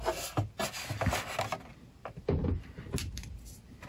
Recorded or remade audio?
recorded